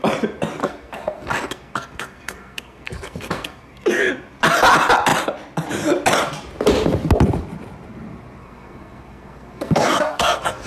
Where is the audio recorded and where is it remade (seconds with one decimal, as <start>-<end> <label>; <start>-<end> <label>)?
0.0-0.6 recorded; 0.6-4.1 remade; 4.1-8.4 recorded; 8.4-10.7 remade